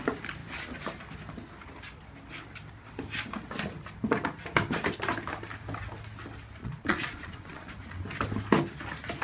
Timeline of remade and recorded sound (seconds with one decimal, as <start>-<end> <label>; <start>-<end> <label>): 0.0-6.6 recorded; 6.6-7.7 remade; 7.7-9.2 recorded